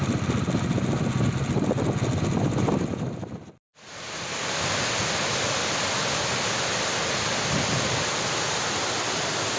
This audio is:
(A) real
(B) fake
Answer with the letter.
A